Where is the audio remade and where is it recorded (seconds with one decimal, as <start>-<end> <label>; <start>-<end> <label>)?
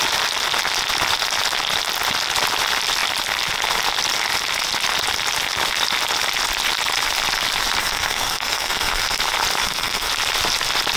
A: 0.0-7.8 recorded; 7.8-9.2 remade; 9.2-9.6 recorded; 9.6-10.1 remade; 10.1-11.0 recorded